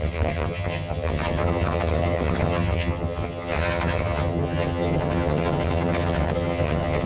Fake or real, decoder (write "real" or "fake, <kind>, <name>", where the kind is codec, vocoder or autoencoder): fake, vocoder, HiFi-GAN